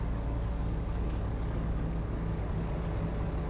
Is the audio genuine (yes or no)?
no